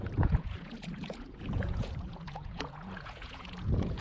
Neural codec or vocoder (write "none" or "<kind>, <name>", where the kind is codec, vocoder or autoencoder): vocoder, Vocos